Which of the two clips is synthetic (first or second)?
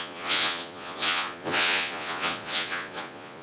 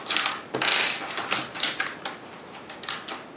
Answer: first